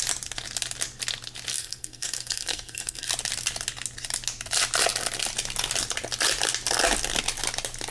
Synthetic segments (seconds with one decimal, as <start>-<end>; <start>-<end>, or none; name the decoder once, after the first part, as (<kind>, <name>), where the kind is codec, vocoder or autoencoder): 1.5-3.1 (codec, SNAC)